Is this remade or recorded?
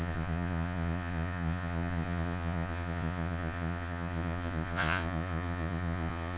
remade